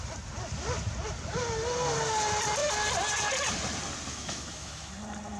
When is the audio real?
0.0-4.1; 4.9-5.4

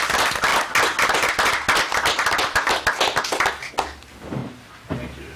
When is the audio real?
0.0-4.4; 4.9-5.4